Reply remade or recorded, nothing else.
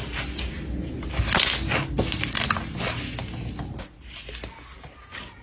recorded